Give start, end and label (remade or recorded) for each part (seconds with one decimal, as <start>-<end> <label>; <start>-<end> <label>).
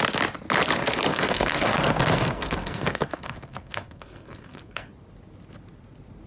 0.0-1.1 recorded; 1.1-4.9 remade; 4.9-6.3 recorded